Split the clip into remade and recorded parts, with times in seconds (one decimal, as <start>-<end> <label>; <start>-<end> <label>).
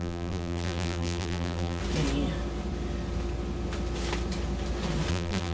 0.0-1.8 remade; 1.8-5.1 recorded; 5.1-5.5 remade